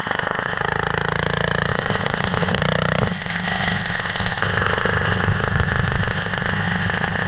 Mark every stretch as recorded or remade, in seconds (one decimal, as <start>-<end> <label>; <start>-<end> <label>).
0.0-0.6 remade; 0.6-1.7 recorded; 1.7-2.6 remade; 2.6-3.0 recorded; 3.0-7.3 remade